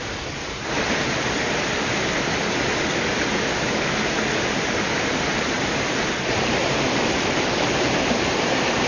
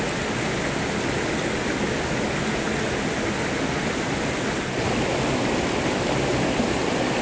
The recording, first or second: second